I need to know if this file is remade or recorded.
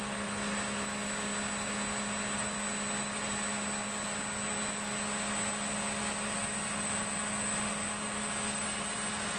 recorded